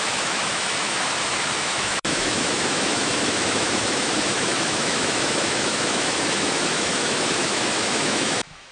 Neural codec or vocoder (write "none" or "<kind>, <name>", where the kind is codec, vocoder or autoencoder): autoencoder, DAC-VAE